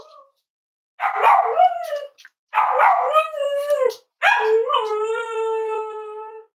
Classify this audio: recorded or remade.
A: recorded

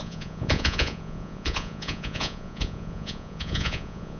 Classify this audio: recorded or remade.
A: remade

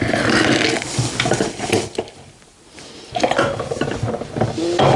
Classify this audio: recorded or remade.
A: recorded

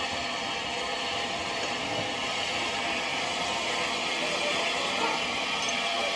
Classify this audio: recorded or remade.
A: recorded